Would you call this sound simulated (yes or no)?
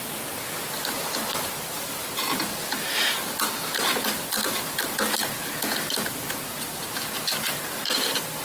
yes